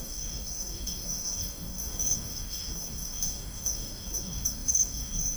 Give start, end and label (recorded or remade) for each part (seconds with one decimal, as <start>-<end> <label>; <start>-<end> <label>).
0.0-5.4 remade

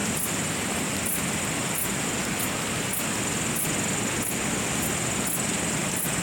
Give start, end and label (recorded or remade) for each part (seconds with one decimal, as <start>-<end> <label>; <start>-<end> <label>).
0.0-6.2 recorded

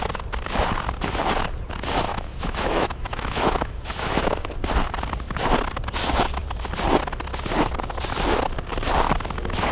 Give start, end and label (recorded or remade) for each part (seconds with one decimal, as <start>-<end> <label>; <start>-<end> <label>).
0.0-2.1 recorded; 2.1-4.5 remade; 4.5-9.7 recorded

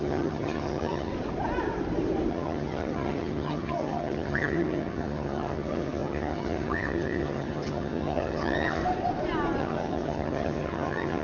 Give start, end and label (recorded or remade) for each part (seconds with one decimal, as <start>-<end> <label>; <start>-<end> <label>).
0.0-1.1 remade; 1.1-2.3 recorded; 2.3-8.8 remade; 8.8-9.6 recorded; 9.6-11.2 remade